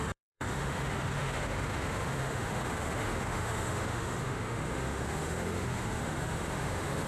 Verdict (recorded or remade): remade